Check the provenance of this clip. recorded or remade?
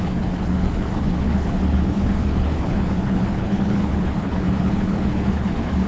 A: remade